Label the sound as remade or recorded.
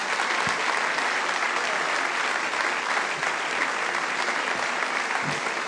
recorded